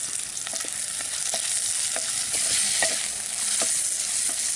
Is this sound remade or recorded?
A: recorded